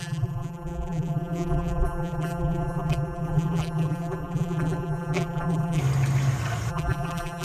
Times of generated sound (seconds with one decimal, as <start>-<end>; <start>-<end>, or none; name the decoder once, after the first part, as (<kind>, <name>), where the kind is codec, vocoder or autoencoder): 0.0-5.8 (vocoder, BigVGAN v2); 6.7-7.4